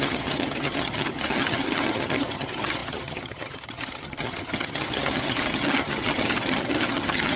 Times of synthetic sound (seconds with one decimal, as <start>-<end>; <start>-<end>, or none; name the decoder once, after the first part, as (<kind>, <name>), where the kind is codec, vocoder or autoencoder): 0.0-7.4 (vocoder, HiFi-GAN)